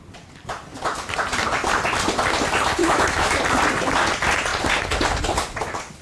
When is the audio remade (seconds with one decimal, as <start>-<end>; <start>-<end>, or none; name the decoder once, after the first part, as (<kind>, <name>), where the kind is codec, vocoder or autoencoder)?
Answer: 2.8-3.4 (autoencoder, DAC-VAE)